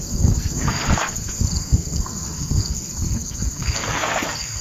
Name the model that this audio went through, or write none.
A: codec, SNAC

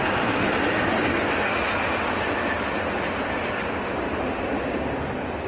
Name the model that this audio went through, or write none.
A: none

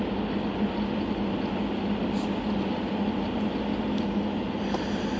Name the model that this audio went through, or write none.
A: none